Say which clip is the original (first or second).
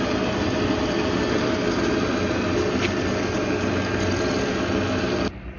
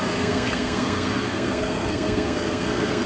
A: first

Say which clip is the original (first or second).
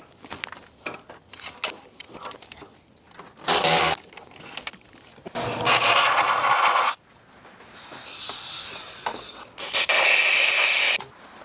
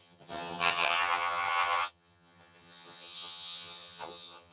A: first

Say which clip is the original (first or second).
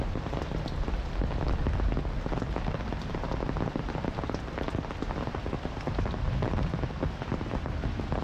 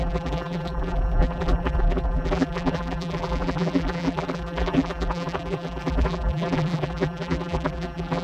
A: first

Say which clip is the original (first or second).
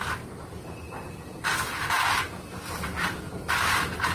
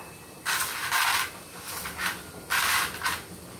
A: second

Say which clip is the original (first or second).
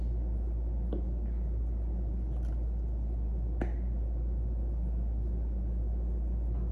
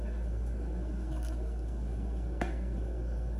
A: first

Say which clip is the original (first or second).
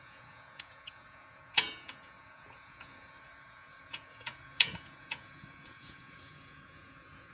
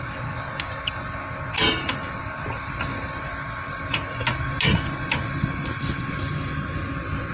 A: second